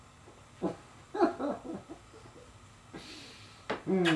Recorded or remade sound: recorded